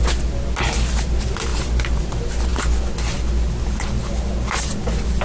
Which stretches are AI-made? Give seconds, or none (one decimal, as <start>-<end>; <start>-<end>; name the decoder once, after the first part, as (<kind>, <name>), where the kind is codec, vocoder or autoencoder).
none